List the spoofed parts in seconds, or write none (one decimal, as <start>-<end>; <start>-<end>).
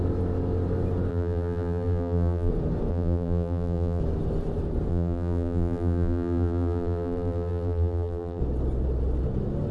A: 1.1-2.5; 2.9-4.0; 4.9-8.4